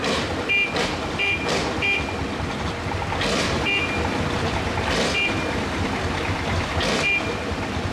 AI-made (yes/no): no